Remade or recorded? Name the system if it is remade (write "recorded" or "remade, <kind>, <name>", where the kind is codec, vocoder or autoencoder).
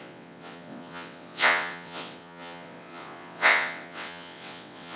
remade, vocoder, WaveNeXt